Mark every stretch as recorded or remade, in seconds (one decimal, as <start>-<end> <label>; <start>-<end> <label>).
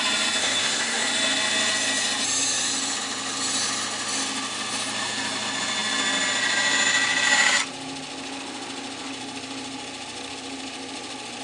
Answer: 0.0-0.4 recorded; 0.4-1.1 remade; 1.1-11.4 recorded